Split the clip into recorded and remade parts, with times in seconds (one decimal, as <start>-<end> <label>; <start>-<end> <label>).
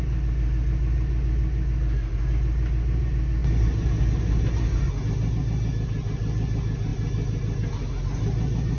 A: 0.0-8.8 recorded